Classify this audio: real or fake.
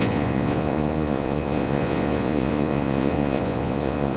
fake